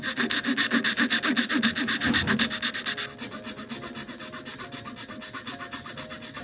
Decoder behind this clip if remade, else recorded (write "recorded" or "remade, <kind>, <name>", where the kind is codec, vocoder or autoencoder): recorded